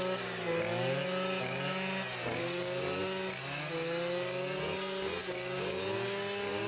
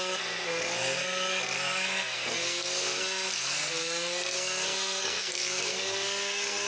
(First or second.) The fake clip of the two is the second